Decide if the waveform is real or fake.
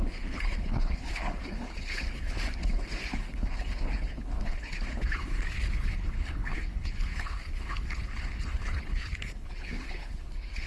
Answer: fake